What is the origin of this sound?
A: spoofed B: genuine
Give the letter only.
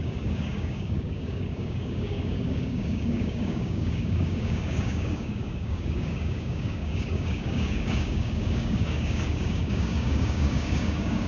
A